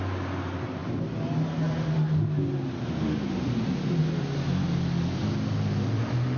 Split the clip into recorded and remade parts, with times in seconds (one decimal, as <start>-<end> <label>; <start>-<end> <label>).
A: 0.0-6.4 recorded